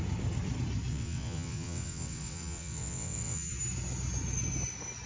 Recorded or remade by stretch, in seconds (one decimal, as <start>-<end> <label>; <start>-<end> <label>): 0.0-0.9 recorded; 0.9-3.5 remade; 3.5-5.1 recorded